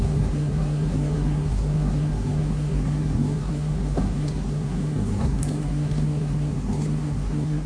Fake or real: fake